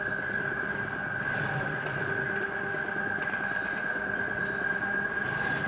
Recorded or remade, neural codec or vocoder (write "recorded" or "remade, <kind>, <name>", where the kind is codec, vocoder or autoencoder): recorded